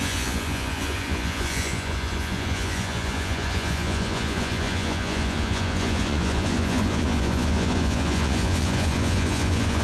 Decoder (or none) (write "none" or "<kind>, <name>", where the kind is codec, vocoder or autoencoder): vocoder, Vocos